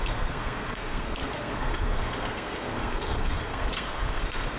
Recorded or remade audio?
remade